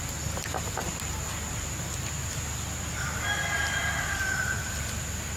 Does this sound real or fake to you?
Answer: real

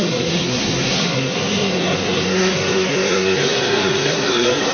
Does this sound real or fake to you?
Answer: fake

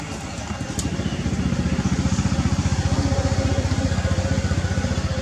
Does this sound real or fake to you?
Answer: real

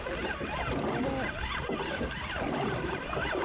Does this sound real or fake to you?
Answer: real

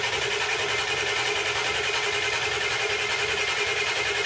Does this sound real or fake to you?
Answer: real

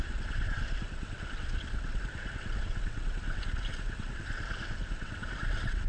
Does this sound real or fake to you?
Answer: fake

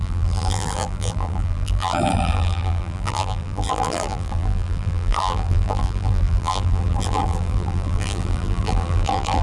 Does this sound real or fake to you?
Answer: fake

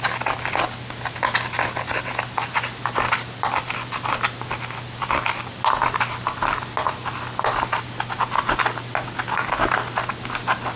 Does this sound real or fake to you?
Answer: real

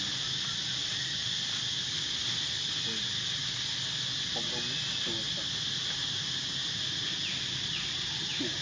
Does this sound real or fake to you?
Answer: real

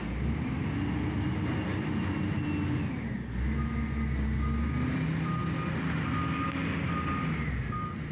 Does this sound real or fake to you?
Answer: real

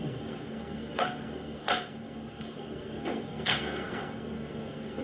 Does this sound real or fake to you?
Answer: fake